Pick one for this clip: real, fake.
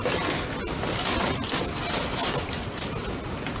real